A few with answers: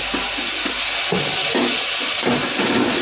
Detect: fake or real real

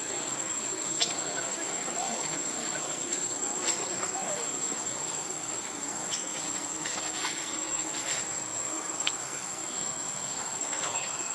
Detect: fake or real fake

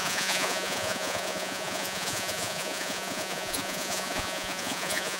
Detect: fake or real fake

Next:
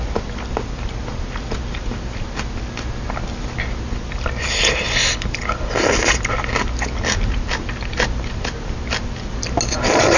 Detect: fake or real real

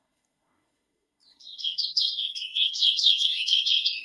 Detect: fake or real fake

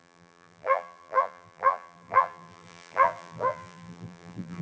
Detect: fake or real fake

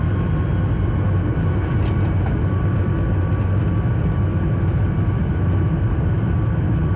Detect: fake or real real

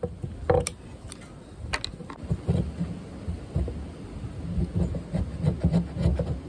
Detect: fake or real real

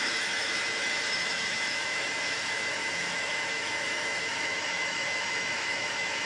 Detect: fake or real fake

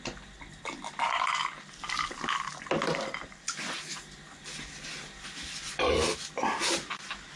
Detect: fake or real real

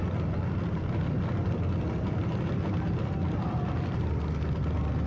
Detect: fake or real real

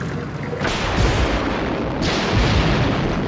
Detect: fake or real real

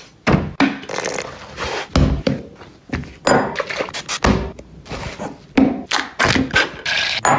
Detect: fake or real real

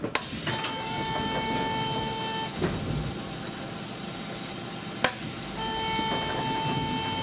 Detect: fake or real real